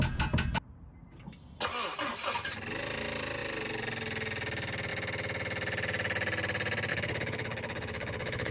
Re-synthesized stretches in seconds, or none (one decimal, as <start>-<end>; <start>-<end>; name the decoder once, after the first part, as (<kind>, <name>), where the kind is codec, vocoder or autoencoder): 6.9-8.5 (codec, HILCodec)